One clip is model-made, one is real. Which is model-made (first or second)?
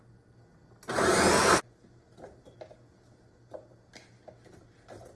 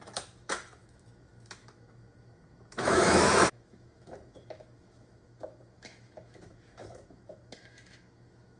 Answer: second